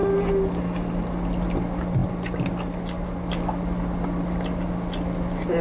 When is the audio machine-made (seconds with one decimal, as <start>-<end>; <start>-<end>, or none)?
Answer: none